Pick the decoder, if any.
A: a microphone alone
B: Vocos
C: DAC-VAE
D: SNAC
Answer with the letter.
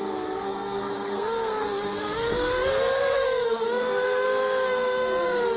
D